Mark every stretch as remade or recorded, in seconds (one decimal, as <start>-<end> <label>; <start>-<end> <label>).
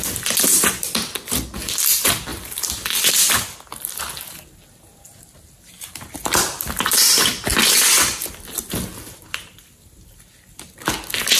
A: 0.0-2.3 recorded; 2.3-4.0 remade; 4.0-7.5 recorded; 7.5-8.5 remade; 8.5-11.4 recorded